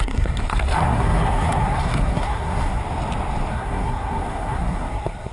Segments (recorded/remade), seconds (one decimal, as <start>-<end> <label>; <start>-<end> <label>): 0.0-2.8 remade; 2.8-3.5 recorded; 3.5-5.3 remade